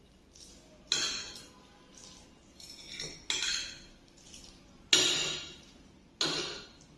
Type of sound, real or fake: real